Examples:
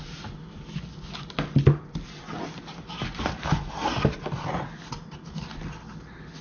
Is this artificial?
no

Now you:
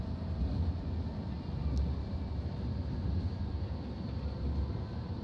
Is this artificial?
no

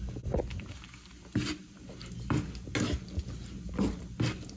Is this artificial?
no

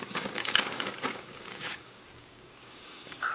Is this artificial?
yes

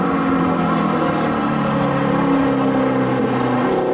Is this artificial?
no